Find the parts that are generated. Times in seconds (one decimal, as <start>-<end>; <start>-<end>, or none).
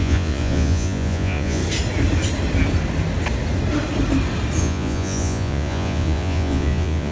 0.0-1.6; 4.6-7.1